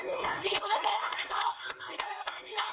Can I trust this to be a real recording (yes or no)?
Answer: no